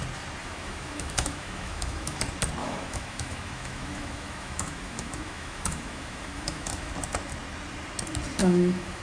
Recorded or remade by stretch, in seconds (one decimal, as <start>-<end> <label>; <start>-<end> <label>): 0.0-0.4 recorded; 0.4-2.2 remade; 2.2-2.6 recorded; 2.6-6.9 remade; 6.9-8.4 recorded; 8.4-9.0 remade